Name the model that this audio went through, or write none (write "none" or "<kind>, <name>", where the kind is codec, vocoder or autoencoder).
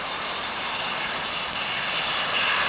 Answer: none